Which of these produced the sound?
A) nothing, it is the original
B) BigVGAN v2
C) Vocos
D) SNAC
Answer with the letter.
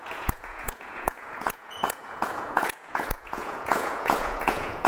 C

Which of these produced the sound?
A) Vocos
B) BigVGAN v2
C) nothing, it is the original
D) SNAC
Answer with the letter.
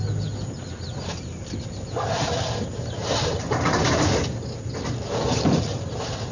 C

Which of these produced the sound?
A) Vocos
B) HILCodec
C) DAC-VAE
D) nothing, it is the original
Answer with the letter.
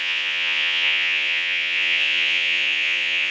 A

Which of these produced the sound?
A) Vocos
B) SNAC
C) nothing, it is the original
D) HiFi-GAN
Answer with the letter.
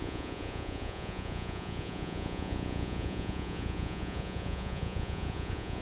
A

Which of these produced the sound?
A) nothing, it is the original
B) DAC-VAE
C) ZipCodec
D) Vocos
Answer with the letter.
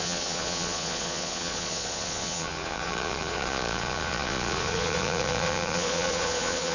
D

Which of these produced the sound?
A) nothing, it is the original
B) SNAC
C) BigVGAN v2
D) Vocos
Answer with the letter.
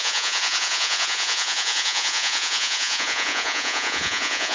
D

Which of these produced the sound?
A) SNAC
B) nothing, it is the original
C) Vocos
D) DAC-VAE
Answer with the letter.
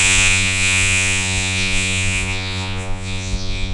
C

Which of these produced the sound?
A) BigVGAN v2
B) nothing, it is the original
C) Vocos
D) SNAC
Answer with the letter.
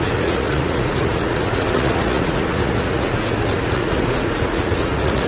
C